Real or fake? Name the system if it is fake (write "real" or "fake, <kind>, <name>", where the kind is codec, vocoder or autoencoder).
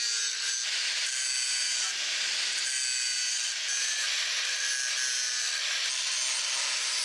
real